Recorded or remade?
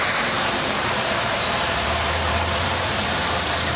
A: remade